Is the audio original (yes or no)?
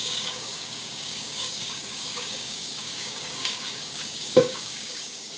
no